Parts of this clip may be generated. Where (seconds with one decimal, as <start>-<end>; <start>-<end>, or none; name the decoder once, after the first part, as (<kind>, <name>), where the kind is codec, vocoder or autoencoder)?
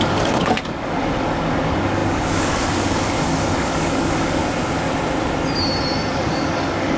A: 0.0-4.4 (codec, DAC); 6.1-7.0